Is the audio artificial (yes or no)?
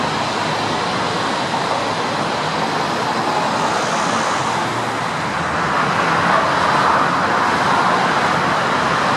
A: no